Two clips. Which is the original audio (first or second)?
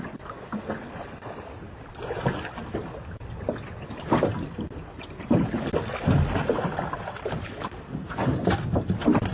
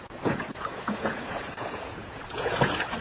first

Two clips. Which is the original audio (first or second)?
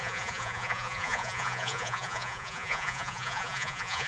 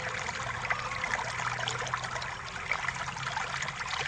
second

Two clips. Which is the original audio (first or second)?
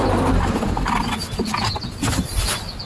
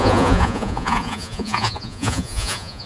first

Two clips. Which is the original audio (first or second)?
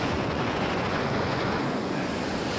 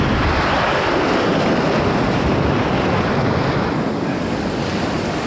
second